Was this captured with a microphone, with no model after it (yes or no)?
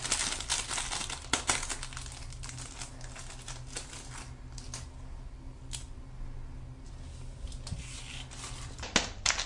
yes